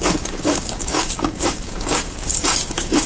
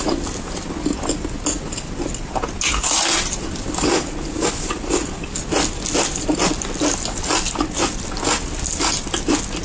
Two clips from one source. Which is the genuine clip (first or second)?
second